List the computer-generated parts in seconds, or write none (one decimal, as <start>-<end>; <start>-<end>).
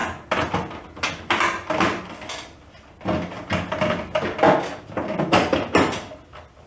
none